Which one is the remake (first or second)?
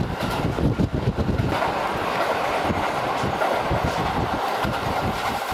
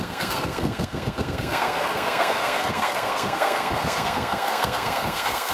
second